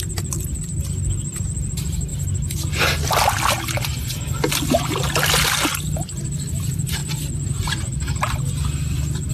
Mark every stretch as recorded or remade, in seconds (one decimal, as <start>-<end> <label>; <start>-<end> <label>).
0.0-9.3 recorded